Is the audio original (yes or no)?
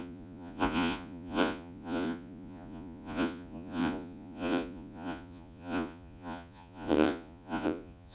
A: no